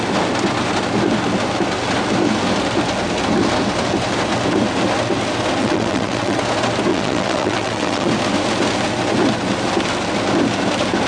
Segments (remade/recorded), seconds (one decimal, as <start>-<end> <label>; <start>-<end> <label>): 0.0-5.6 recorded; 5.6-6.4 remade; 6.4-6.9 recorded; 6.9-8.1 remade; 8.1-11.1 recorded